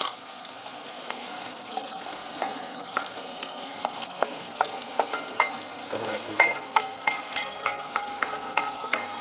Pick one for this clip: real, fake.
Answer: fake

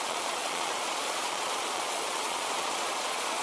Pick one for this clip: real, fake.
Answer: fake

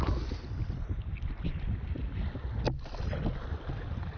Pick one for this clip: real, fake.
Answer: real